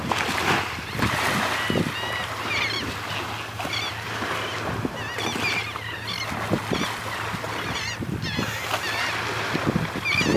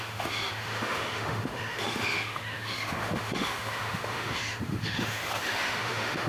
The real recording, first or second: first